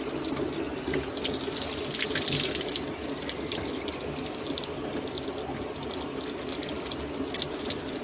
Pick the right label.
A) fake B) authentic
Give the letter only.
B